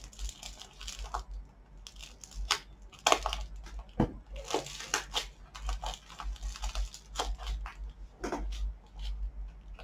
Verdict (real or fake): real